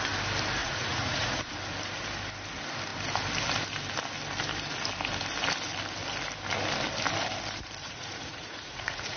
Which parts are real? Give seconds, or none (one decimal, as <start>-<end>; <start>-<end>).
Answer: 0.0-0.6; 1.5-7.8